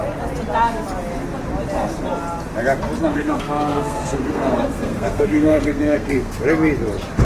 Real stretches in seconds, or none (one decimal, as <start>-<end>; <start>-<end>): 0.0-3.1; 6.3-7.2